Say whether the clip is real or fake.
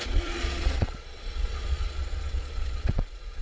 fake